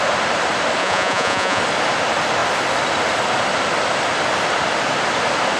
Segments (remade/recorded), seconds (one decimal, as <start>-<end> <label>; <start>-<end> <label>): 0.0-0.8 recorded; 0.8-1.6 remade; 1.6-5.6 recorded